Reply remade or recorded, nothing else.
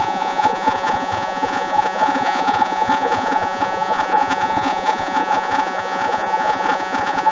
remade